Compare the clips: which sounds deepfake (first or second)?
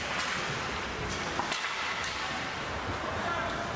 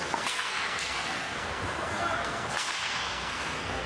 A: second